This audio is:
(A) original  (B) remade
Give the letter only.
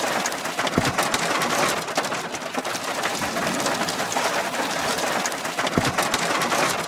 A